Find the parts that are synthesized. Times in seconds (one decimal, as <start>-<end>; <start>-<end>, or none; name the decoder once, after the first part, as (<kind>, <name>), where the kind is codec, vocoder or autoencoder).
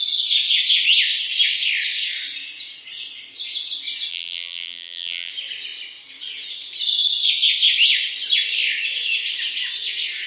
4.1-5.3 (vocoder, BigVGAN v2)